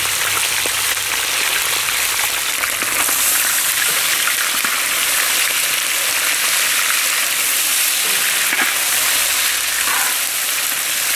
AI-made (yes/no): no